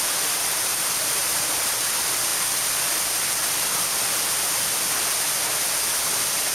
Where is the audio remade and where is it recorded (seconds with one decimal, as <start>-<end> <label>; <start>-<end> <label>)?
0.0-0.7 recorded; 0.7-1.5 remade; 1.5-6.5 recorded